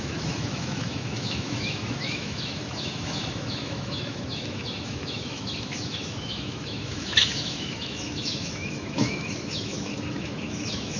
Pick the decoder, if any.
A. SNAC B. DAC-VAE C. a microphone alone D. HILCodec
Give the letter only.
B